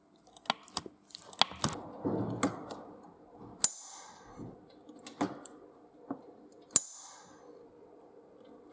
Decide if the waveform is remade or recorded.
recorded